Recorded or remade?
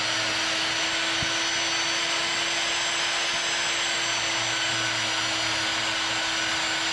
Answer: recorded